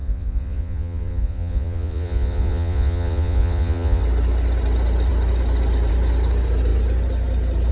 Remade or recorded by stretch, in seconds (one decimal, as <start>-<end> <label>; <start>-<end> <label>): 0.0-4.0 remade; 4.0-7.7 recorded

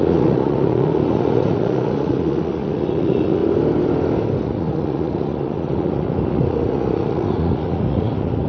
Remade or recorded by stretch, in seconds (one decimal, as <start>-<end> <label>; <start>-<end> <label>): 0.0-3.4 remade; 3.4-4.4 recorded; 4.4-8.5 remade